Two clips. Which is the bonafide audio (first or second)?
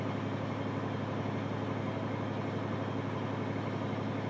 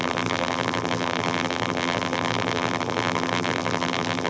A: first